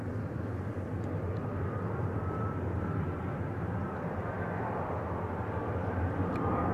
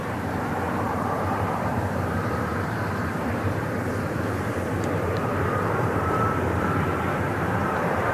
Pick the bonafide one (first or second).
first